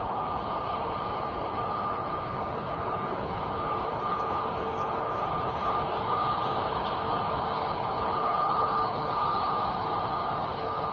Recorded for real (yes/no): no